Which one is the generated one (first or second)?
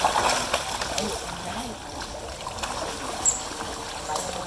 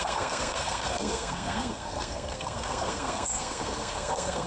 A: second